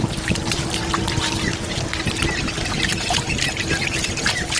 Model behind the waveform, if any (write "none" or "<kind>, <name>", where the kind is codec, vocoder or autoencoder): vocoder, BigVGAN v2